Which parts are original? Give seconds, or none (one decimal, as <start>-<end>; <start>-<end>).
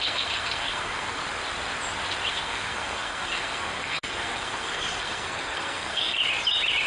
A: 1.2-2.3; 6.2-6.9